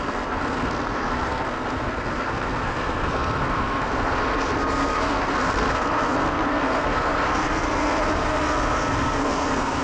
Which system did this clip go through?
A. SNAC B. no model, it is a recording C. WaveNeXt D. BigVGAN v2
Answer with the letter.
A